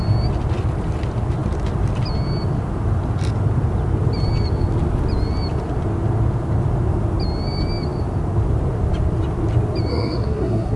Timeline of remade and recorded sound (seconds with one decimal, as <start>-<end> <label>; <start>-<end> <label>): 0.0-9.9 recorded; 9.9-10.8 remade